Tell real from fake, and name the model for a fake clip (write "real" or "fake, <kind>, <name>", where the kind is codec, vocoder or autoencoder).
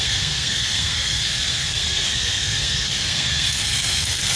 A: fake, codec, SNAC